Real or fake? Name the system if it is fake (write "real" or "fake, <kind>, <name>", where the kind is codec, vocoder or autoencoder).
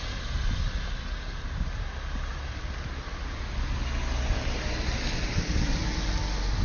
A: real